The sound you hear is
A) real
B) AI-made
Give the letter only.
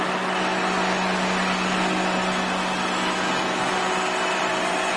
A